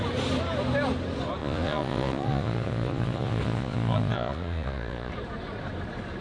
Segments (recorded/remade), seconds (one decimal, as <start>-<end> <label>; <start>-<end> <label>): 0.0-1.4 recorded; 1.4-5.1 remade; 5.1-6.2 recorded

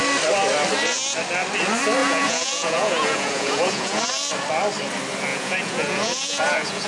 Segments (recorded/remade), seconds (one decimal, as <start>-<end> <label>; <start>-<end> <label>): 0.0-2.0 recorded; 2.0-4.0 remade; 4.0-5.3 recorded; 5.3-6.9 remade

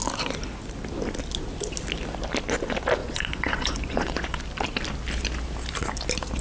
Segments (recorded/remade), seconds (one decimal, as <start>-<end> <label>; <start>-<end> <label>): 0.0-3.0 recorded; 3.0-4.4 remade; 4.4-6.4 recorded